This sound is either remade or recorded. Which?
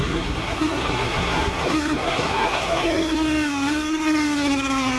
remade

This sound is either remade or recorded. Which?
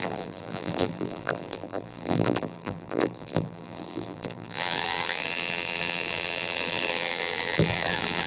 remade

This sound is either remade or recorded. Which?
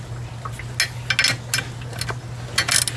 recorded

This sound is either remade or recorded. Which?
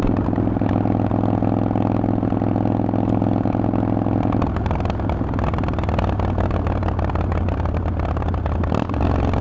recorded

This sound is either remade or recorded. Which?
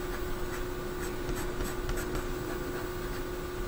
recorded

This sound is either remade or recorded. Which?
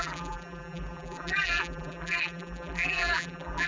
remade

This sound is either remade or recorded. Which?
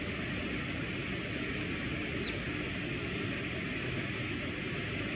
recorded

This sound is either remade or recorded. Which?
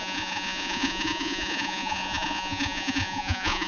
remade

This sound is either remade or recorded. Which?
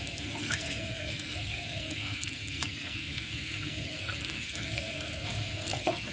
remade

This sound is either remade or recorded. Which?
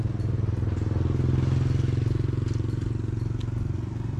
recorded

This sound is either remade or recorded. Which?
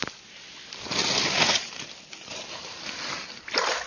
recorded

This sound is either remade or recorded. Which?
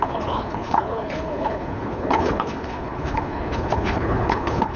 remade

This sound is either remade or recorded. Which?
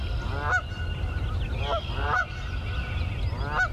recorded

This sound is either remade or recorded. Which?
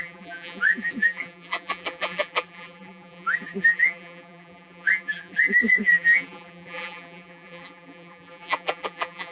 remade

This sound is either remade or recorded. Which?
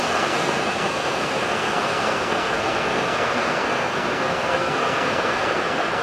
remade